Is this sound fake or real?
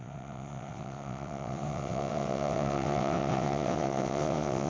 fake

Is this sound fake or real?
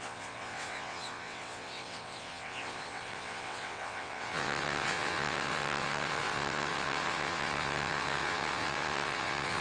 fake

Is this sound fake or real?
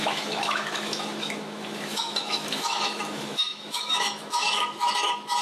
fake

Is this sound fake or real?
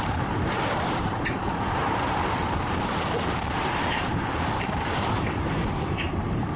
fake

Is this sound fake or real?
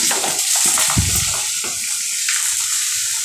real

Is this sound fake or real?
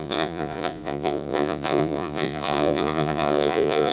fake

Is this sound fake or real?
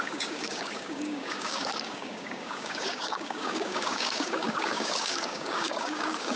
fake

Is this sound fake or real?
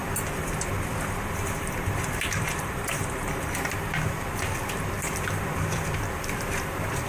fake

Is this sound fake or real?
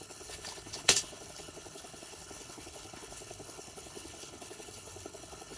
fake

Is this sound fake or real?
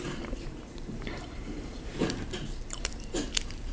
fake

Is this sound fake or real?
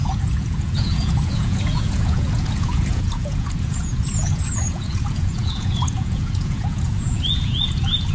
fake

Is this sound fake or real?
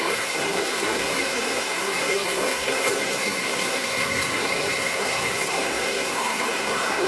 fake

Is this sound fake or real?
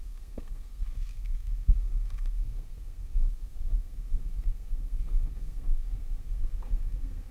fake